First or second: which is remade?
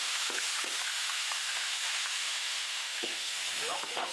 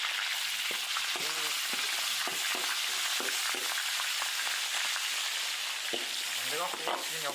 first